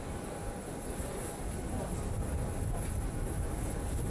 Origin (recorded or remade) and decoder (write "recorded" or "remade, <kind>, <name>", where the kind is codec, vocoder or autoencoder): recorded